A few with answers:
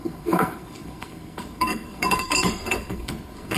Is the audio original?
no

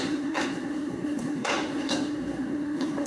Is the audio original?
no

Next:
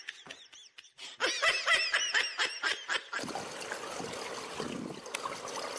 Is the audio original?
yes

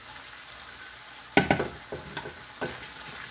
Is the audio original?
yes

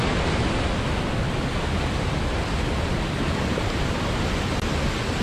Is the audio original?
yes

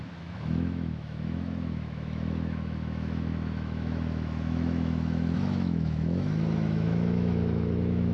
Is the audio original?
no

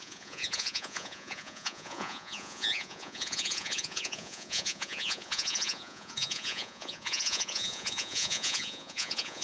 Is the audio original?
no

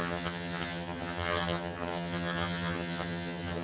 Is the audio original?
no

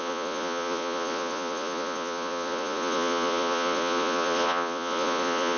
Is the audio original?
no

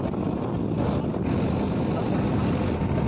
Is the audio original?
yes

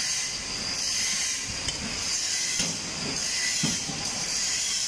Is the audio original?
yes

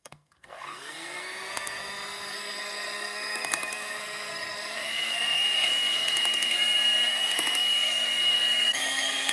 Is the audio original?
no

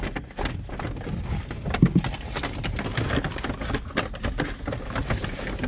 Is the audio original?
yes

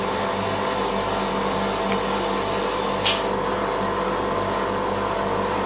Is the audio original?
yes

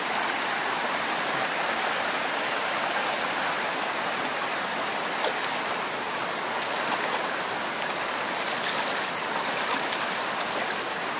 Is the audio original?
yes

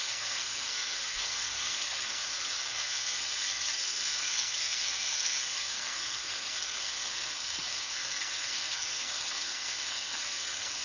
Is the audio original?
no